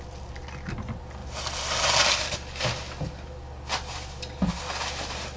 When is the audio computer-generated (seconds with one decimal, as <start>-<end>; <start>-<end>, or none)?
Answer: none